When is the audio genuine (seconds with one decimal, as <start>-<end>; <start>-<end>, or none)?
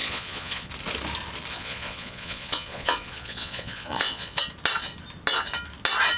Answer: 0.7-1.5; 4.4-6.2